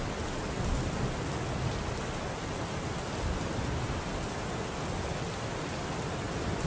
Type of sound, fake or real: real